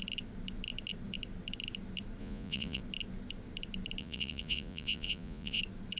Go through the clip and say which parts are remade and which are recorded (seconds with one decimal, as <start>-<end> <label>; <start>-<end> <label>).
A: 0.0-2.2 recorded; 2.2-2.8 remade; 2.8-4.0 recorded; 4.0-5.6 remade; 5.6-6.0 recorded